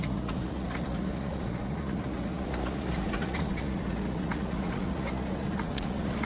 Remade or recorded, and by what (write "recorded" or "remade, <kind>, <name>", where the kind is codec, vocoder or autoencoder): remade, vocoder, Vocos